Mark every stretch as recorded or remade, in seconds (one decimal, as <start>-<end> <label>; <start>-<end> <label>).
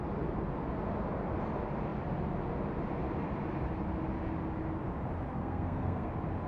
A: 0.0-5.3 recorded; 5.3-6.1 remade; 6.1-6.5 recorded